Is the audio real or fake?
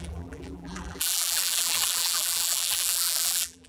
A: fake